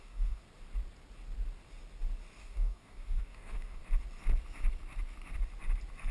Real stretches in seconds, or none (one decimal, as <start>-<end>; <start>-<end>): 0.4-2.4; 3.8-6.1